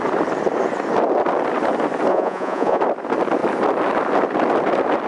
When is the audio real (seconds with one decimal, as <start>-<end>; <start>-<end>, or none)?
0.0-2.1; 2.8-5.1